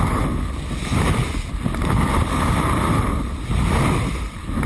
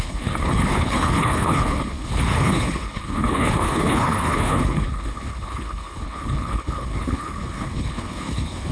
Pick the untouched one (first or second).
first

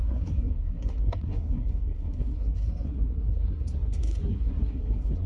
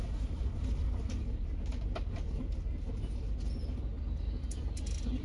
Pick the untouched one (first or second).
second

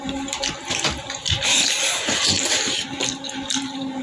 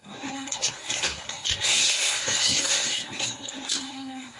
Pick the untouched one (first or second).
first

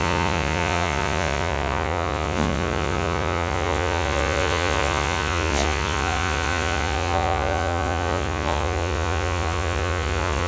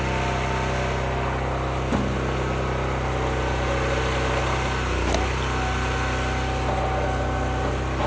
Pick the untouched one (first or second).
second